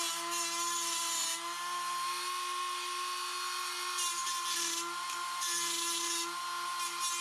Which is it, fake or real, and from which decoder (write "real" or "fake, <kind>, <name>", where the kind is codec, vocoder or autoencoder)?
real